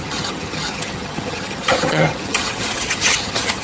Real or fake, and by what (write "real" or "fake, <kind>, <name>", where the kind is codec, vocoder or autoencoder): fake, vocoder, HiFi-GAN